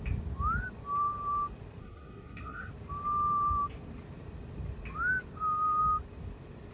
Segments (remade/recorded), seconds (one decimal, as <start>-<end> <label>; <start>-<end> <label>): 0.0-1.8 recorded; 1.8-2.7 remade; 2.7-6.7 recorded